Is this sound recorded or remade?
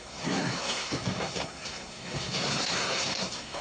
remade